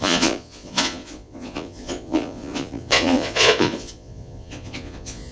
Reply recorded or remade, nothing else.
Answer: remade